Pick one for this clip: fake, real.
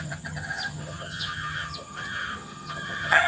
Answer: fake